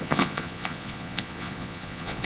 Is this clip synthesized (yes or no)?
yes